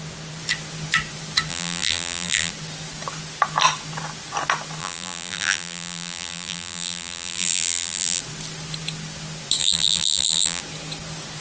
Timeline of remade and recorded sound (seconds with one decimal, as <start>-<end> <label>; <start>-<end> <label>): 0.0-1.5 recorded; 1.5-2.5 remade; 2.5-4.8 recorded; 4.8-8.2 remade; 8.2-9.6 recorded; 9.6-10.6 remade; 10.6-11.4 recorded